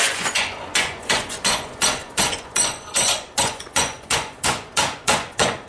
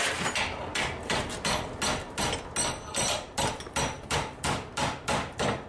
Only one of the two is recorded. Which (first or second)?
second